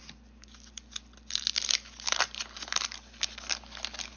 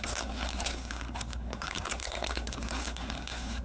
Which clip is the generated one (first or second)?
second